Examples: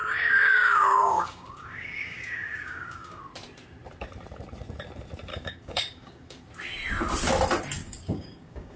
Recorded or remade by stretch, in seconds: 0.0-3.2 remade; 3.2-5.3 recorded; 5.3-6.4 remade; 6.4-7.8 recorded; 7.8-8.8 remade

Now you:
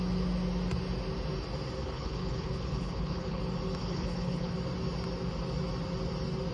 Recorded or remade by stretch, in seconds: 0.0-1.8 recorded; 1.8-3.4 remade; 3.4-3.8 recorded; 3.8-4.5 remade; 4.5-6.5 recorded

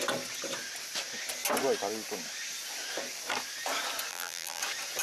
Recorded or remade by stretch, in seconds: 0.0-4.1 recorded; 4.1-4.6 remade; 4.6-5.0 recorded

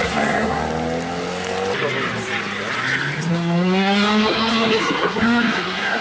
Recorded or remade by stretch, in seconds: 0.0-0.6 remade; 0.6-3.3 recorded; 3.3-6.0 remade

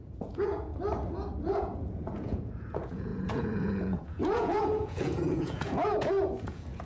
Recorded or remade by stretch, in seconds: 0.0-0.7 remade; 0.7-1.4 recorded; 1.4-6.8 remade

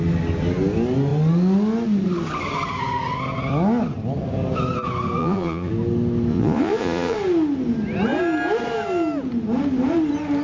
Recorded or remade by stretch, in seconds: 0.0-5.2 recorded; 5.2-5.7 remade; 5.7-6.3 recorded; 6.3-7.2 remade; 7.2-10.4 recorded